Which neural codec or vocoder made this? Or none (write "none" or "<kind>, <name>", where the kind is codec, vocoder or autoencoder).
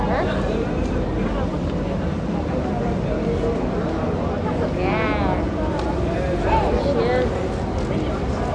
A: none